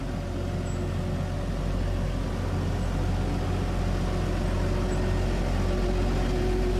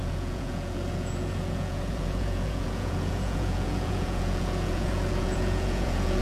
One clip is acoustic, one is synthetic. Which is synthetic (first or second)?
second